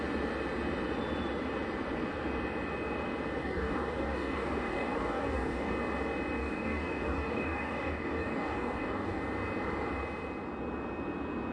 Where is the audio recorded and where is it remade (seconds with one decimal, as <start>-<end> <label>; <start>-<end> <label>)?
0.0-3.4 recorded; 3.4-5.7 remade; 5.7-6.4 recorded; 6.4-9.2 remade; 9.2-11.5 recorded